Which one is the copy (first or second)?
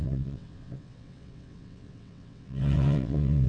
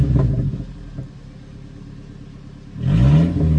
first